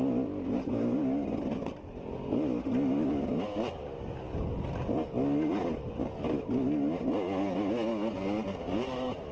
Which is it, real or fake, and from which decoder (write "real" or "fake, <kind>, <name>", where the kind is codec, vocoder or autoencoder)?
real